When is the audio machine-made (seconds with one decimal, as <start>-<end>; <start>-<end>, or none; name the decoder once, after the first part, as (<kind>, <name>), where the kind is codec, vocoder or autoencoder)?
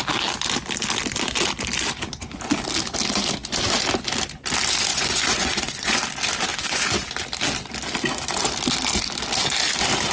4.9-6.0 (vocoder, Vocos); 6.5-7.1